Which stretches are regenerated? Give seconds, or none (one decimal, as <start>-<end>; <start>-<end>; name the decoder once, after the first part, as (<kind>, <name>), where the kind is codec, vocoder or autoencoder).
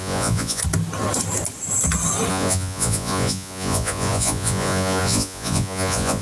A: 0.0-0.6 (vocoder, Vocos); 2.3-6.2